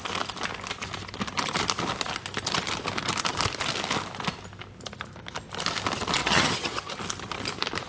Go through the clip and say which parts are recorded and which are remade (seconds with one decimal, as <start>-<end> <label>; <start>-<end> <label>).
0.0-6.2 recorded; 6.2-7.0 remade; 7.0-7.9 recorded